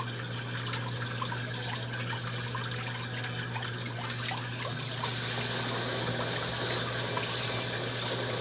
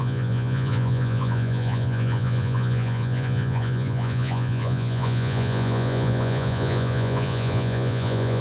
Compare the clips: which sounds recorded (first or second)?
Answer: first